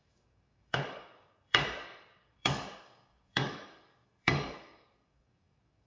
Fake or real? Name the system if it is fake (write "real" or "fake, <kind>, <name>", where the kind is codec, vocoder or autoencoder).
fake, codec, DAC